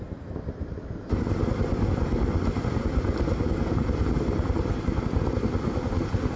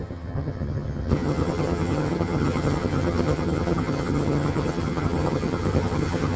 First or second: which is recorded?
first